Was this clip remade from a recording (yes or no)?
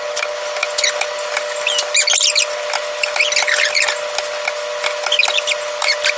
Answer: no